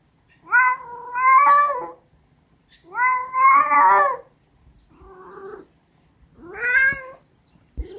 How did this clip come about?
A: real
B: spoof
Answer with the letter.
A